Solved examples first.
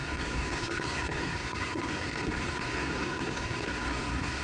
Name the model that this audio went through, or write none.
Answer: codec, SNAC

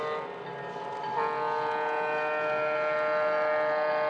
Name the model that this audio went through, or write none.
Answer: none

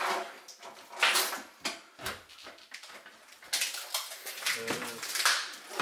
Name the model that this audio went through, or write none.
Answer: none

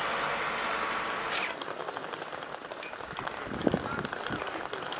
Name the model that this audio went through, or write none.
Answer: none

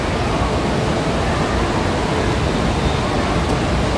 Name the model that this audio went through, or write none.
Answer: none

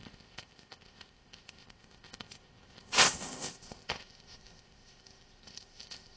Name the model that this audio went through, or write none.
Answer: codec, ZipCodec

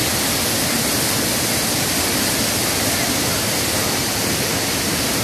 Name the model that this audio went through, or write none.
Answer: none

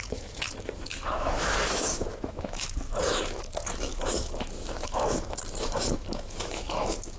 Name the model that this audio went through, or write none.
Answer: autoencoder, DAC-VAE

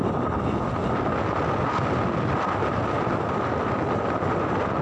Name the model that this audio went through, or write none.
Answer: none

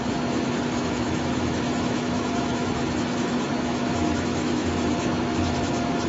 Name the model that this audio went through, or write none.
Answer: autoencoder, DAC-VAE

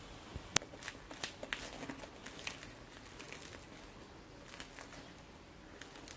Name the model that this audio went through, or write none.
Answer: none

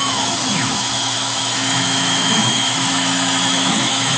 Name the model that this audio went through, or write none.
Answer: autoencoder, DAC-VAE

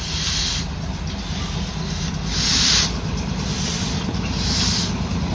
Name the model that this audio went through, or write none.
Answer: vocoder, BigVGAN v2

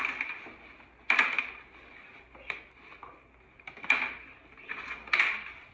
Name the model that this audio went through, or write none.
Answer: none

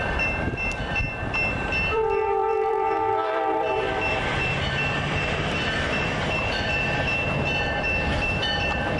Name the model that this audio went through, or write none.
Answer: vocoder, BigVGAN v2